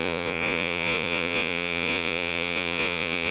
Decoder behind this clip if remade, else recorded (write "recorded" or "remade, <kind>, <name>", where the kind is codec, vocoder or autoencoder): remade, vocoder, Vocos